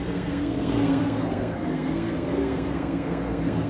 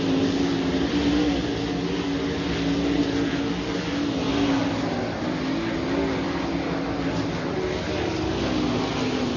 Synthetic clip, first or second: first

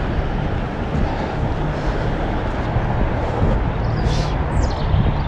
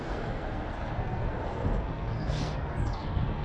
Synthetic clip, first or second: second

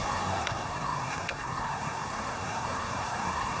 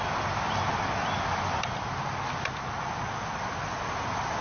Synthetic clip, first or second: first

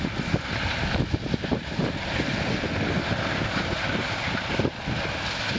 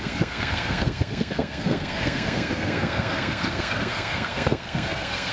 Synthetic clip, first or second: second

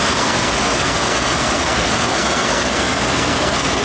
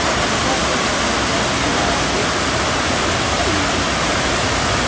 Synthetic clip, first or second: first